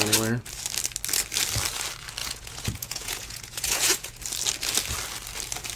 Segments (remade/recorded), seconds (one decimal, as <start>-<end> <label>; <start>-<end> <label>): 0.0-2.2 recorded; 2.2-4.2 remade; 4.2-5.8 recorded